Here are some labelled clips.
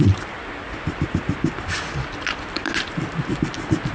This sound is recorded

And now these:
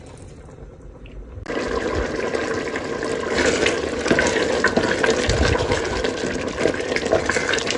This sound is recorded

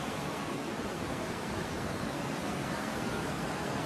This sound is remade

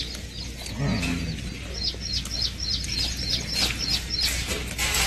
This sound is recorded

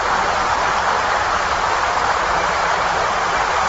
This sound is remade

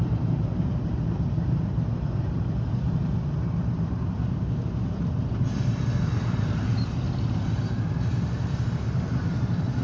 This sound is remade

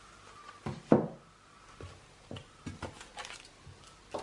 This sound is recorded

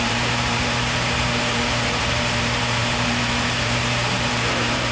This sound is remade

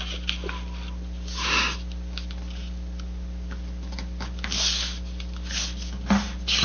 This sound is recorded